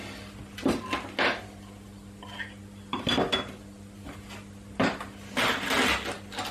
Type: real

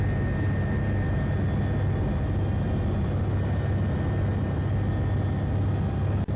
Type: real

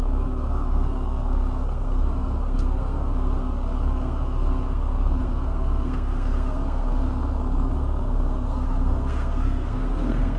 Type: fake